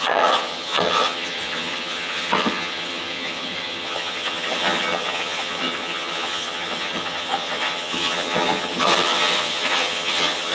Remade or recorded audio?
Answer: remade